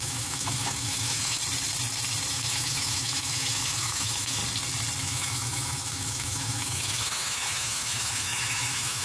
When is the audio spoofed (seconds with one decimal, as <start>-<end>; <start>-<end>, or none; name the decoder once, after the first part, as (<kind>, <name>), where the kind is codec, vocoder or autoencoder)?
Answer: 0.0-1.4 (autoencoder, DAC-VAE); 2.3-4.4; 5.0-9.0